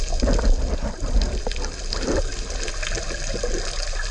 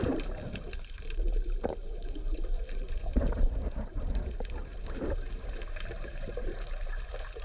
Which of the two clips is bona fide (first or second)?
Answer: first